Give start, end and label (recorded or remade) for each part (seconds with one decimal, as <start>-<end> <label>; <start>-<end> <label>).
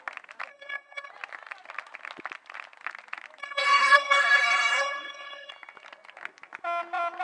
0.0-0.5 recorded; 0.5-1.1 remade; 1.1-3.4 recorded; 3.4-5.5 remade; 5.5-7.2 recorded